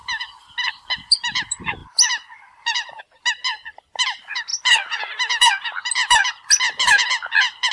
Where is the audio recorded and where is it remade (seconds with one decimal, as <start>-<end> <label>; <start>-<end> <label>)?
0.0-1.8 recorded; 1.8-3.0 remade; 3.0-7.7 recorded